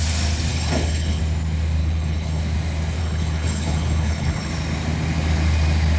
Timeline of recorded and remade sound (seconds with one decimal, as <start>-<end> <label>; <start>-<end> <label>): 0.0-0.5 recorded; 0.5-1.2 remade; 1.2-1.8 recorded; 1.8-2.4 remade; 2.4-3.0 recorded; 3.0-4.5 remade; 4.5-6.0 recorded